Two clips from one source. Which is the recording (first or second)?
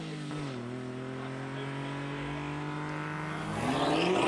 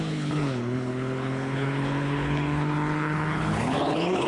first